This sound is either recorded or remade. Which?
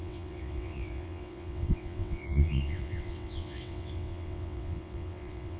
remade